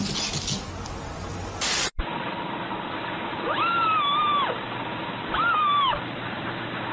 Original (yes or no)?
yes